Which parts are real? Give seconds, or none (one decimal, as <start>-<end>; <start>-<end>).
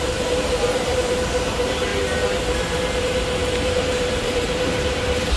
1.9-3.0